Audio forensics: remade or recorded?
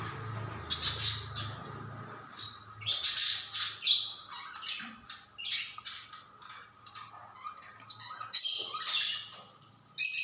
recorded